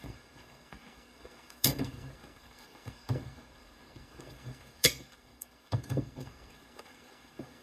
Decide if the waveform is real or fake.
fake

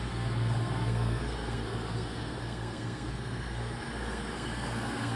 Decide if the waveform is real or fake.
fake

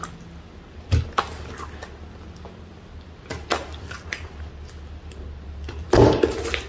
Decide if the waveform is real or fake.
real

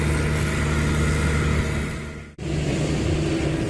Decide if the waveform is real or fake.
real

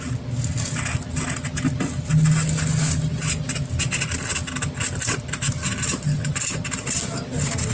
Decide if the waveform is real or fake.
real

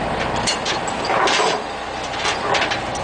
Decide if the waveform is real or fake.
real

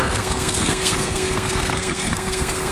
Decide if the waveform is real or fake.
fake